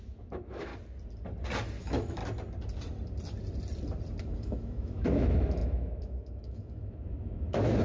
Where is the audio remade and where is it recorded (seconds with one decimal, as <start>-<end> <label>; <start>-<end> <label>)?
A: 0.0-0.7 remade; 0.7-1.8 recorded; 1.8-2.2 remade; 2.2-4.2 recorded; 4.2-7.8 remade